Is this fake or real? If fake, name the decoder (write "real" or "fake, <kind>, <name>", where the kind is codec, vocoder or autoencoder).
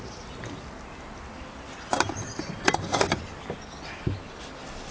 real